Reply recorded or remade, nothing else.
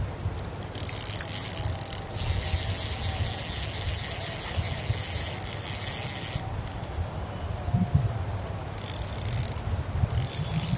recorded